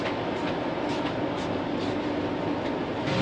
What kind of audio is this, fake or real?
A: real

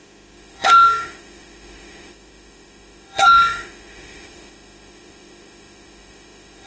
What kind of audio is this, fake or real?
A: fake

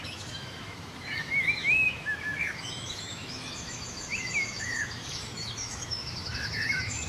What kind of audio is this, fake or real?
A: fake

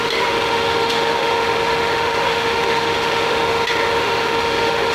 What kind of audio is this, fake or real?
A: fake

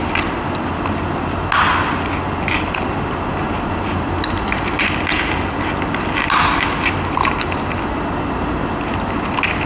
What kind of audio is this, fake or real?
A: real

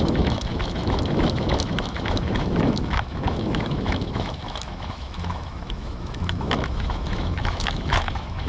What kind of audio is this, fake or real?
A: fake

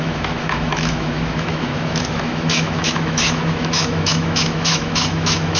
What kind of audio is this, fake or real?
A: fake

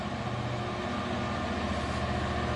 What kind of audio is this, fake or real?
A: real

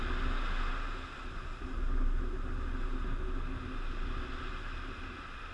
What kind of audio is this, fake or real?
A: real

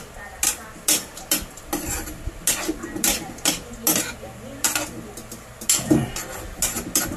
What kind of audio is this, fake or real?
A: real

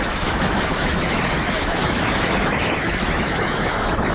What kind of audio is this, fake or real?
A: fake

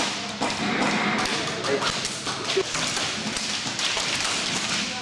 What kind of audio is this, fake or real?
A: real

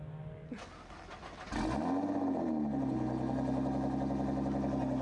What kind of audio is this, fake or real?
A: real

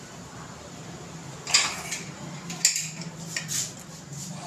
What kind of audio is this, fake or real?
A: real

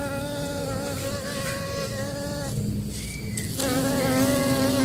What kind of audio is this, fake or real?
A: real